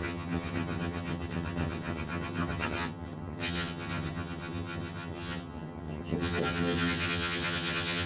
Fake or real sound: fake